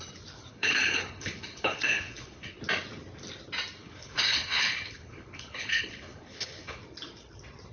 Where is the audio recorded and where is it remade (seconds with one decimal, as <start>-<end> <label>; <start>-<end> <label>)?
0.0-0.5 recorded; 0.5-2.6 remade; 2.6-3.8 recorded; 3.8-6.8 remade; 6.8-7.7 recorded